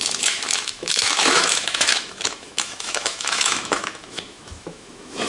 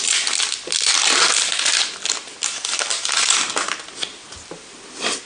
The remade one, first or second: first